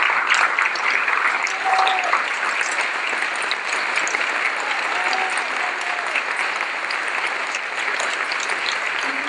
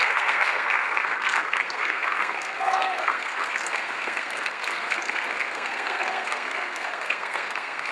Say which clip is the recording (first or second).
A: first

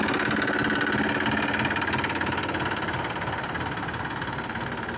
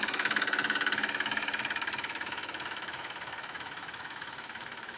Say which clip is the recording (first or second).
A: first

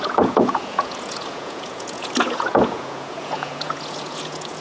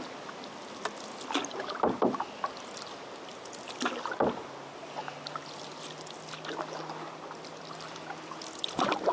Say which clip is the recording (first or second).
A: second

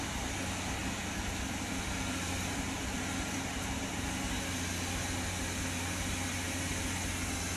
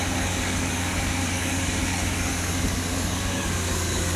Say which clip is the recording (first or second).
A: first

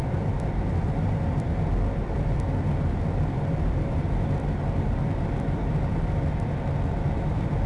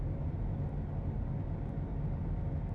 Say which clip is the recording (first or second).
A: second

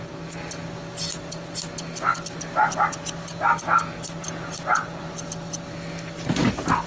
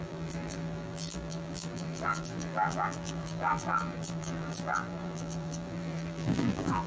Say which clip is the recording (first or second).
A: first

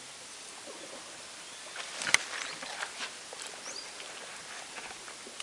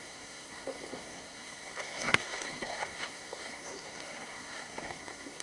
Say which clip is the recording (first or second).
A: first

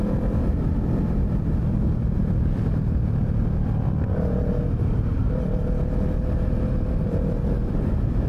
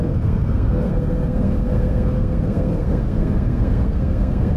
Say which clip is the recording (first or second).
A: first